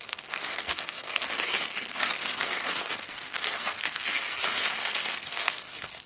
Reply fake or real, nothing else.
fake